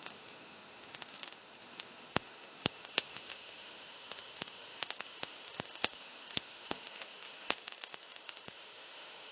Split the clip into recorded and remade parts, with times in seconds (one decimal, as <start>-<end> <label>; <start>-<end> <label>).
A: 0.0-9.3 remade